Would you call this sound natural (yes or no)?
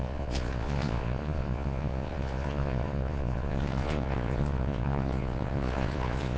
no